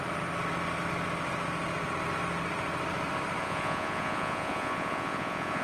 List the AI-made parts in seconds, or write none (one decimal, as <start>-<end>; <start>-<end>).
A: 3.4-5.6